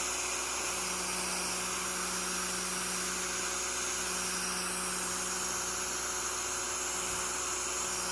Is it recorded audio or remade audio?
recorded